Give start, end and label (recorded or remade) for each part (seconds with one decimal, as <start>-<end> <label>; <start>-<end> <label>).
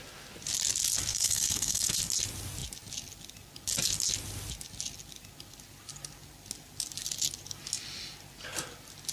0.0-1.1 recorded; 1.1-2.0 remade; 2.0-9.1 recorded